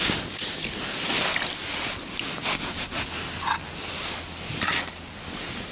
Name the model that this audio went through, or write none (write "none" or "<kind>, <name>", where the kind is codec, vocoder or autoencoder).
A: none